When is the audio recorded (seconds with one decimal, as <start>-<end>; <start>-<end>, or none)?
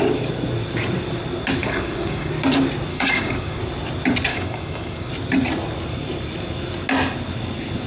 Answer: 0.0-1.6; 2.3-2.9; 3.6-4.3; 5.1-7.9